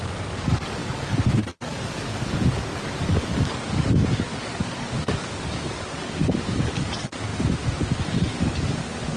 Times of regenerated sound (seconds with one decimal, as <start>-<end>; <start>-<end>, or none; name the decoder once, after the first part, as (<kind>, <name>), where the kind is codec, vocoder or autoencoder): 0.0-7.3 (codec, DAC); 8.3-9.2